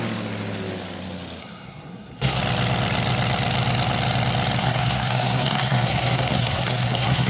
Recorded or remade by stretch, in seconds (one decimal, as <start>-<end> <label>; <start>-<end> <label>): 0.0-1.4 recorded; 1.4-2.4 remade; 2.4-4.6 recorded; 4.6-7.3 remade